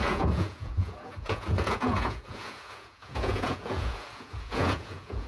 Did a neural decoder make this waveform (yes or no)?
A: yes